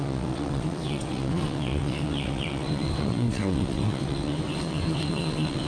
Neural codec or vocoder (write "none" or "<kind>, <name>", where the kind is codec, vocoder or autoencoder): vocoder, WaveNeXt